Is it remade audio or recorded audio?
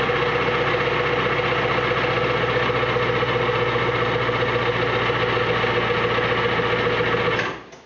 recorded